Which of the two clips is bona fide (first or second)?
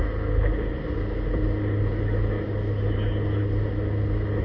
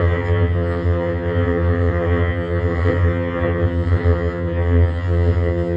first